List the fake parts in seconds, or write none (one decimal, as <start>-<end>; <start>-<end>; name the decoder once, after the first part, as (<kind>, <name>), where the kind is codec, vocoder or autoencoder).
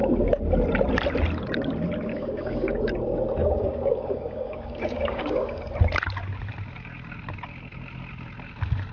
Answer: 2.1-2.8 (codec, DAC); 3.4-5.6